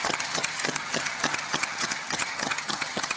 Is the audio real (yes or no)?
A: no